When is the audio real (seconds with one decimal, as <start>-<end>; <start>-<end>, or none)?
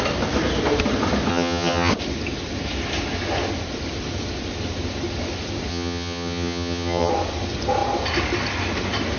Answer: 0.0-1.3; 1.9-5.7; 7.1-9.2